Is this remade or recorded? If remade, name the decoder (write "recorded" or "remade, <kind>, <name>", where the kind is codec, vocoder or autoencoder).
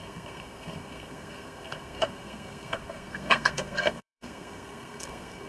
remade, codec, SNAC